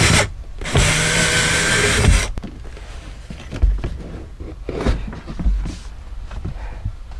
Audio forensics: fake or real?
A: real